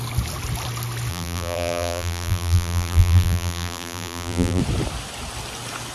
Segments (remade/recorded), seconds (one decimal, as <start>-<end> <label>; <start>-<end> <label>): 0.0-1.1 recorded; 1.1-4.6 remade; 4.6-5.9 recorded